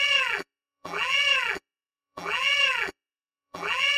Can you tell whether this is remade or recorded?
remade